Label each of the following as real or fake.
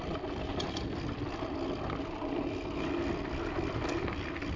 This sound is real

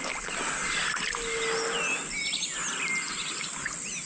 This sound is real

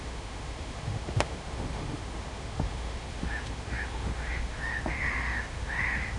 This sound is fake